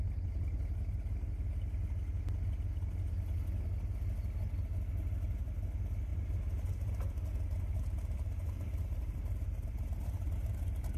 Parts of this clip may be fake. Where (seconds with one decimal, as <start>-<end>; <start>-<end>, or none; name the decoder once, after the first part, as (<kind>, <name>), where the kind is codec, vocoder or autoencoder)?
6.1-11.0 (vocoder, BigVGAN v2)